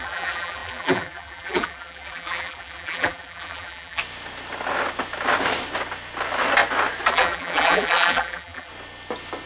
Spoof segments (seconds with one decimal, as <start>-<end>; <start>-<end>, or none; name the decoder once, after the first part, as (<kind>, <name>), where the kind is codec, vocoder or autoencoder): 0.0-4.0 (vocoder, BigVGAN v2); 7.1-8.7

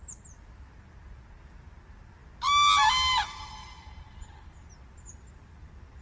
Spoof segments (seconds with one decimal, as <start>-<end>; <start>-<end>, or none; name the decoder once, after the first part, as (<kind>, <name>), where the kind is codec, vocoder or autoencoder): none

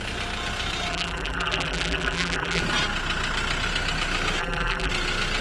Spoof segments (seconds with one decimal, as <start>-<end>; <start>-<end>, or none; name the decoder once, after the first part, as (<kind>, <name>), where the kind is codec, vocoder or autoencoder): 0.9-2.6 (vocoder, BigVGAN v2); 4.4-4.9

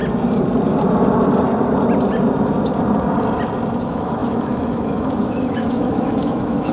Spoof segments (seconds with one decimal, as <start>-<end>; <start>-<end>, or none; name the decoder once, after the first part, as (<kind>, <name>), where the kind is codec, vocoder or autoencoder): 3.8-6.7 (autoencoder, DAC-VAE)

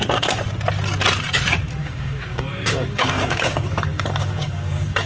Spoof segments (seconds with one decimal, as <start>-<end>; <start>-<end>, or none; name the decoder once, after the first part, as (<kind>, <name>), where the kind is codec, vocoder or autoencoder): 1.8-5.1 (codec, DAC)

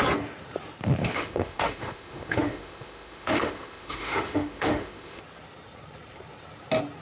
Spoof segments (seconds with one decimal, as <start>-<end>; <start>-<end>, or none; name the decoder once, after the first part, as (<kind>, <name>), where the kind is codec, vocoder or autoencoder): 1.0-5.2 (autoencoder, DAC-VAE)